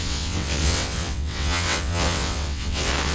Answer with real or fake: fake